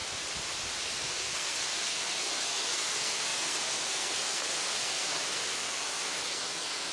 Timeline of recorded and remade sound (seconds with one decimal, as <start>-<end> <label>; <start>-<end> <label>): 0.0-0.8 recorded; 0.8-6.9 remade